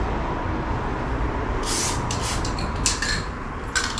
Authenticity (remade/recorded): recorded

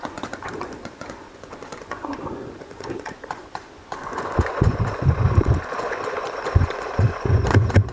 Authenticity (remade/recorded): remade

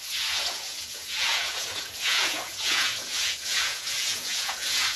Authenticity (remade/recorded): remade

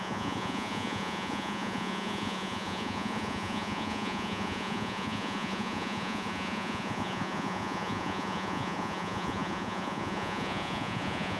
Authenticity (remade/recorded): remade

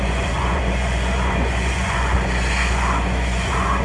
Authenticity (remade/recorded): remade